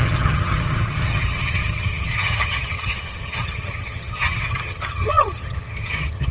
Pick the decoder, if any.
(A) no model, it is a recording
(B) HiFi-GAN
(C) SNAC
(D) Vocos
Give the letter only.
B